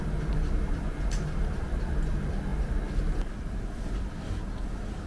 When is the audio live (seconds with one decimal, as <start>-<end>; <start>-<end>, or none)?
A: 2.5-3.4